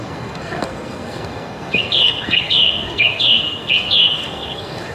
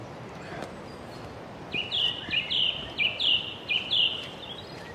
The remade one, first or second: first